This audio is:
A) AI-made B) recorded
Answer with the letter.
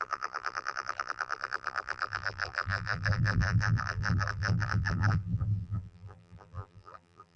A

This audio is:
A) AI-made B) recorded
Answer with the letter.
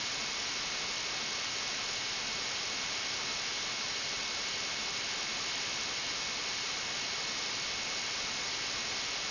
B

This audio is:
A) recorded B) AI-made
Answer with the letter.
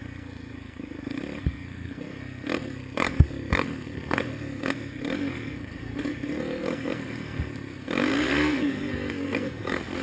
B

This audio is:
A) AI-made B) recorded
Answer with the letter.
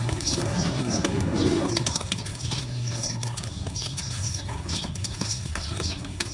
A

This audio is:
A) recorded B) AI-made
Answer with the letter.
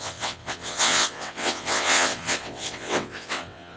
B